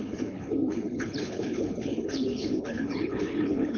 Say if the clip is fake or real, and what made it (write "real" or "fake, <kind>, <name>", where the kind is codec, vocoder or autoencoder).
fake, codec, HILCodec